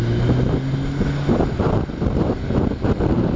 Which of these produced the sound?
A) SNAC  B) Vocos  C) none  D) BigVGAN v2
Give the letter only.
C